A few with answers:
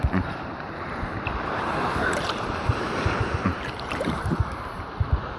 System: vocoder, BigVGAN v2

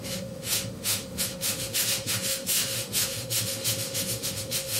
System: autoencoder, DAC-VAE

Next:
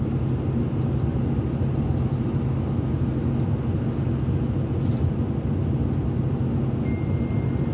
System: none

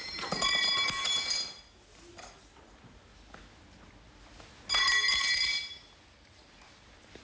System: none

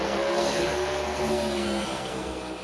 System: codec, SNAC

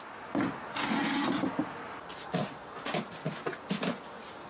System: none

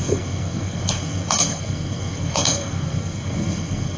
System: codec, SNAC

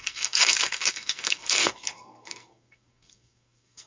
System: codec, SNAC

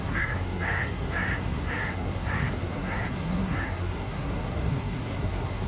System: codec, SNAC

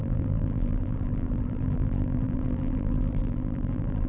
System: vocoder, BigVGAN v2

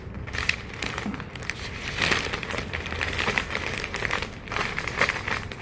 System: vocoder, BigVGAN v2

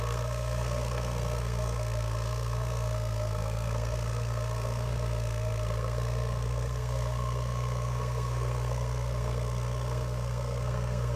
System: codec, SNAC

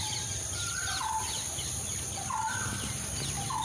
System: none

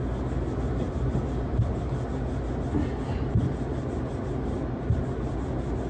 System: none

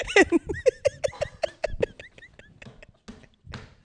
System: none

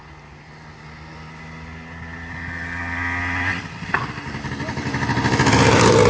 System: none